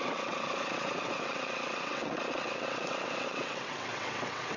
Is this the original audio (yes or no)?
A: no